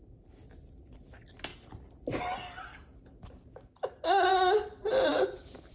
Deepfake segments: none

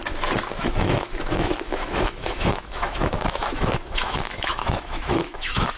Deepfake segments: 0.6-5.8 (autoencoder, DAC-VAE)

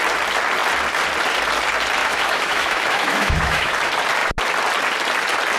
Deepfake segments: 2.0-3.7 (autoencoder, DAC-VAE)

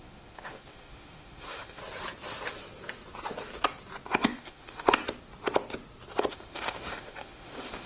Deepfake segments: 0.0-1.8 (autoencoder, DAC-VAE); 4.2-5.0; 6.3-7.9

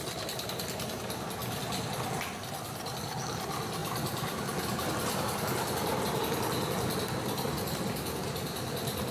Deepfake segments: none

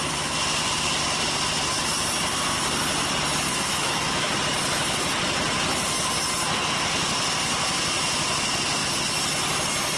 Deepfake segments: 3.5-4.3 (autoencoder, DAC-VAE)

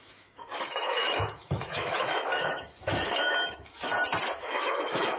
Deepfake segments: 0.0-3.9 (autoencoder, DAC-VAE); 4.4-5.2

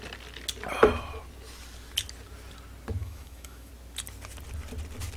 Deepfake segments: 3.0-3.7 (autoencoder, DAC-VAE)